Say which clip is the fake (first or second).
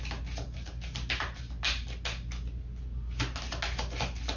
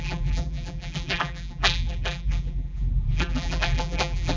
second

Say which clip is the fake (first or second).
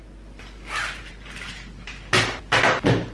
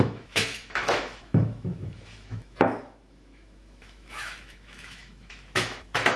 second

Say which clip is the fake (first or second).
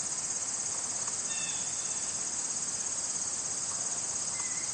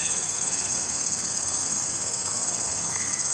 second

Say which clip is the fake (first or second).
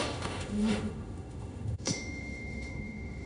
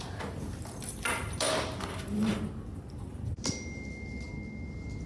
first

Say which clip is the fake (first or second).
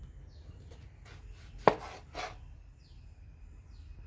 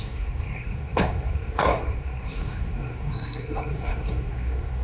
second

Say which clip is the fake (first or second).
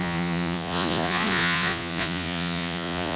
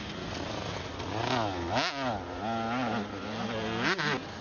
first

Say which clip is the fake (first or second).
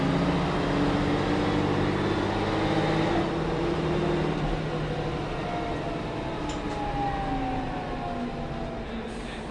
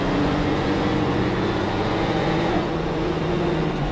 second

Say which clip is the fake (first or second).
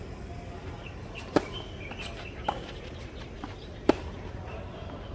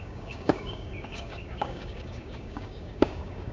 second